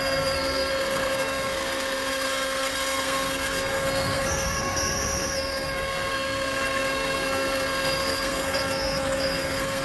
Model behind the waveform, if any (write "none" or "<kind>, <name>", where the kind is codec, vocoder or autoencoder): codec, SNAC